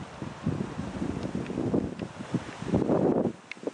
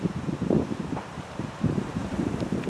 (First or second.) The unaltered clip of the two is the first